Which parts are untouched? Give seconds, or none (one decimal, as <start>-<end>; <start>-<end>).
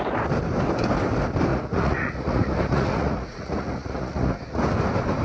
0.0-1.5; 4.6-5.2